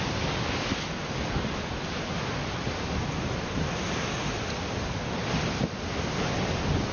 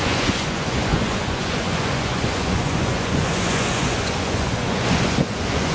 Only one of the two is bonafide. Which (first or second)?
first